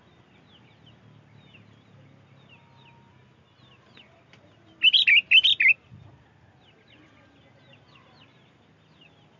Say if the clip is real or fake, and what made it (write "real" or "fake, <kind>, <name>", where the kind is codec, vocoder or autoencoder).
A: real